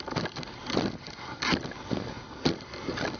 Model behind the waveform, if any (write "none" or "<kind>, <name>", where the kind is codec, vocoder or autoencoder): none